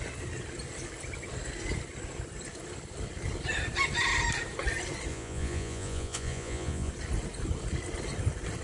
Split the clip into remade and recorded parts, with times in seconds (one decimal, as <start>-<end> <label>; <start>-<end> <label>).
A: 0.0-5.1 recorded; 5.1-6.9 remade; 6.9-8.6 recorded